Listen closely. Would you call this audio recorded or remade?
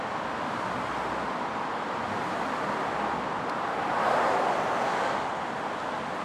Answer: recorded